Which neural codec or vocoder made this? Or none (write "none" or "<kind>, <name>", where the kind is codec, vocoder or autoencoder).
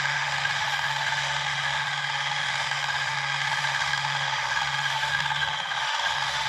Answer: autoencoder, DAC-VAE